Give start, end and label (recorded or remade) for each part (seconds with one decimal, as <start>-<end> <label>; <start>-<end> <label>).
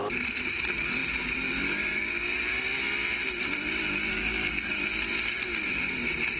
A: 0.0-4.1 recorded; 4.1-4.7 remade; 4.7-6.4 recorded